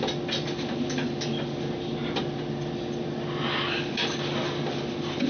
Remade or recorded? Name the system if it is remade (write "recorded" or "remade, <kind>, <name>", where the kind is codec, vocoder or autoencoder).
recorded